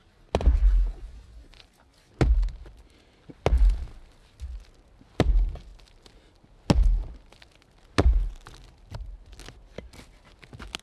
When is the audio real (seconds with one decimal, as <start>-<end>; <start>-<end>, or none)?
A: 0.0-10.8